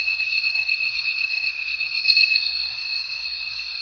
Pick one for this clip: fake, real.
fake